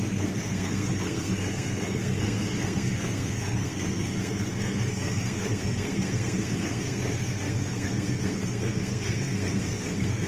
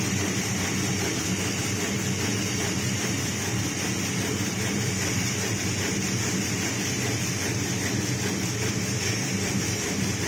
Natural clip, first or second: second